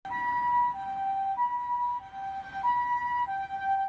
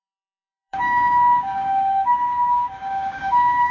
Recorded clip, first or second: first